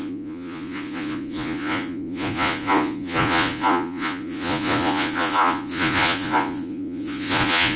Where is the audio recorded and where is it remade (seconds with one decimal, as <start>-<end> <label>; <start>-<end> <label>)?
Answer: 0.0-7.8 remade